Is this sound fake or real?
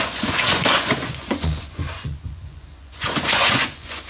fake